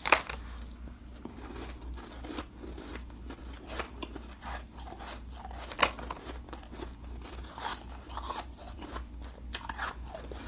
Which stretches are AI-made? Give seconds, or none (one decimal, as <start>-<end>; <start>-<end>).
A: 2.9-4.7; 7.7-8.9